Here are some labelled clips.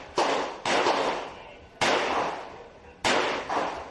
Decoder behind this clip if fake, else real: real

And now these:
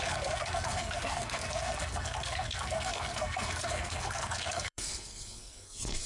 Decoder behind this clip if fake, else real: fake, codec, SNAC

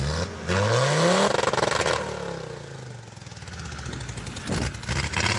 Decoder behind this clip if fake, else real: real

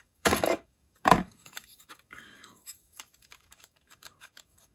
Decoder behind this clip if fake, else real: fake, codec, DAC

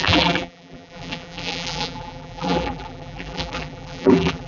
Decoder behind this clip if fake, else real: fake, vocoder, BigVGAN v2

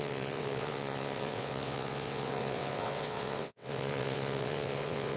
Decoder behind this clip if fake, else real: fake, vocoder, WaveNeXt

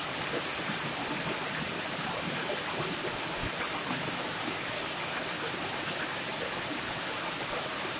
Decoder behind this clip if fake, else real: real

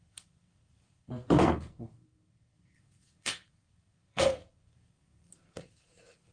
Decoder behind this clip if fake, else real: fake, codec, SNAC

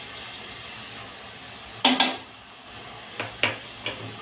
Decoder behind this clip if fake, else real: real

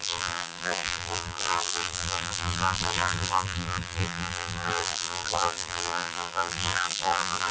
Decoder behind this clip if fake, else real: fake, vocoder, BigVGAN v2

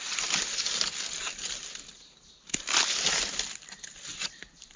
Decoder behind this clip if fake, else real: real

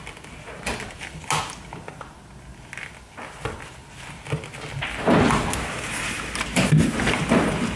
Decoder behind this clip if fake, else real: real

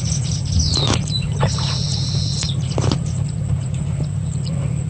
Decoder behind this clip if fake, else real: fake, vocoder, Vocos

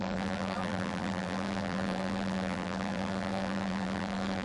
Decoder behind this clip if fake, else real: fake, vocoder, BigVGAN v2